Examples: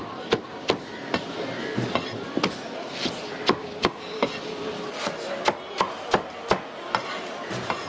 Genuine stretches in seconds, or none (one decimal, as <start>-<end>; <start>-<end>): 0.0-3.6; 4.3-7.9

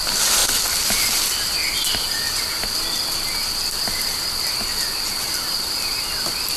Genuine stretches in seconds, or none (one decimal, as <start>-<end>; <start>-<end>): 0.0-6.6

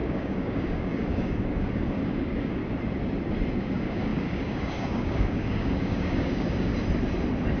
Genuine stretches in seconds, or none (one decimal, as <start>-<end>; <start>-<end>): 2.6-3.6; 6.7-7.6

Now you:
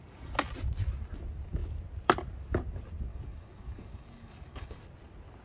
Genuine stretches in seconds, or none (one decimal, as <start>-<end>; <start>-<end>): 0.0-3.1; 4.8-5.4

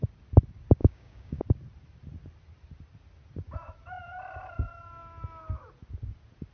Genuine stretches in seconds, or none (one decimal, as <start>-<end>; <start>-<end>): 0.0-0.8; 1.4-6.5

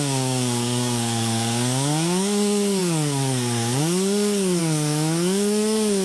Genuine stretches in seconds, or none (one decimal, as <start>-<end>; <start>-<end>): none